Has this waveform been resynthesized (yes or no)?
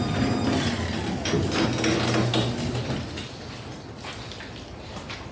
no